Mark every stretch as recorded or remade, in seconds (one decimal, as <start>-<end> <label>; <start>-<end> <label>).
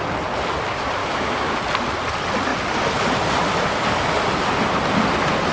0.0-1.0 recorded; 1.0-1.6 remade; 1.6-5.5 recorded